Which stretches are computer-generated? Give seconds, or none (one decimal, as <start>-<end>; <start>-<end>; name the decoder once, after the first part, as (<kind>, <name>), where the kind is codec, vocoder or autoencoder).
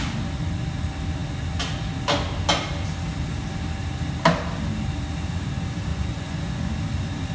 5.9-6.7 (vocoder, Vocos)